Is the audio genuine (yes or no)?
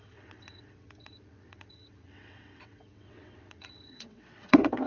no